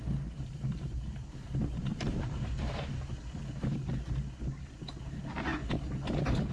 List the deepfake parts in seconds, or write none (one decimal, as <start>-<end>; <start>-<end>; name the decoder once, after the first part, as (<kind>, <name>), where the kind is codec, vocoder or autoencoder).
1.9-2.5 (vocoder, BigVGAN v2)